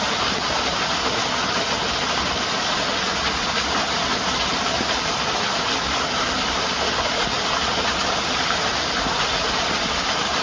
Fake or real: real